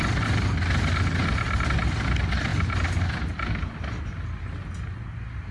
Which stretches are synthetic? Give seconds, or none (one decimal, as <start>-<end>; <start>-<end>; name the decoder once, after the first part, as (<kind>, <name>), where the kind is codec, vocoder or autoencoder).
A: none